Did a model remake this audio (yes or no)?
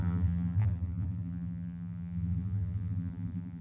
yes